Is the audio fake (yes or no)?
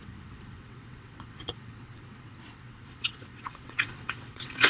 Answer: yes